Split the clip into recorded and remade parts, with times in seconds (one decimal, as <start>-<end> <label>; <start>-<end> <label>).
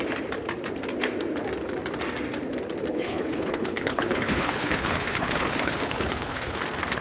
0.0-2.9 recorded; 2.9-6.6 remade; 6.6-7.0 recorded